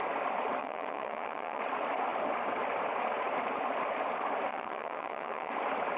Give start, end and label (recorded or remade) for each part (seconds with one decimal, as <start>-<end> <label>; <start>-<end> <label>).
0.0-0.6 recorded; 0.6-1.6 remade; 1.6-4.5 recorded; 4.5-5.5 remade; 5.5-6.0 recorded